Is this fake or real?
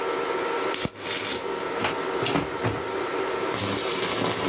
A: real